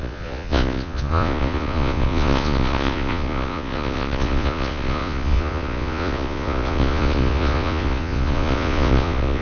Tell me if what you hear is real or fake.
fake